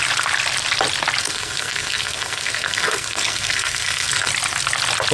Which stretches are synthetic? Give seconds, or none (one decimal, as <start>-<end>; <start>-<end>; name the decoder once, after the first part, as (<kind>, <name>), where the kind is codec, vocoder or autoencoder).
1.2-4.3 (codec, SNAC)